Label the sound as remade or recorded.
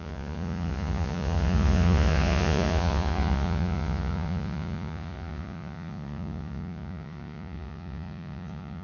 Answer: remade